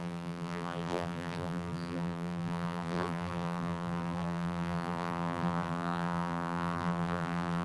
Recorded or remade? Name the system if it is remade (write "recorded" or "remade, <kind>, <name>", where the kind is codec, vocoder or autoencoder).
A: remade, vocoder, BigVGAN v2